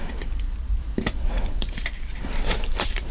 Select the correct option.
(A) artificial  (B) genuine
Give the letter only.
A